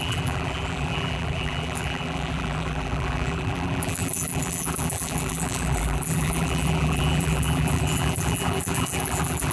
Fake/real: fake